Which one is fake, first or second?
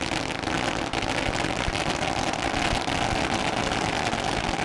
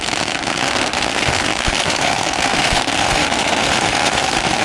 second